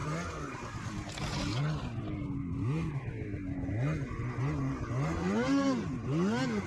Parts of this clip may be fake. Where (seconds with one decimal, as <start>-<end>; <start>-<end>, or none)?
none